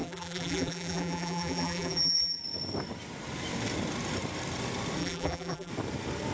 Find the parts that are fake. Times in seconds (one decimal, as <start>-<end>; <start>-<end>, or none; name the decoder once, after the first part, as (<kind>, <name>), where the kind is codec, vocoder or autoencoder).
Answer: 0.0-2.4 (vocoder, BigVGAN v2); 5.0-5.7